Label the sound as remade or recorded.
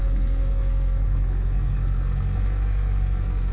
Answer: remade